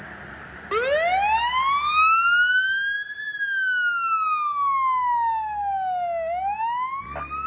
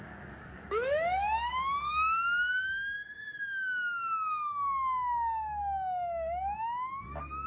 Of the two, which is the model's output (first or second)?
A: second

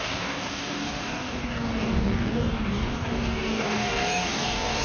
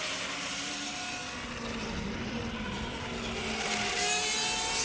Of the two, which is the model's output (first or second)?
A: first